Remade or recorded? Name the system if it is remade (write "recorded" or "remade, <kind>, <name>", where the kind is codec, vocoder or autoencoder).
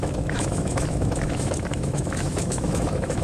remade, autoencoder, DAC-VAE